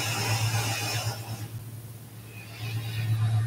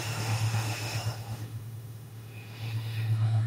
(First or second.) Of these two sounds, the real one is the first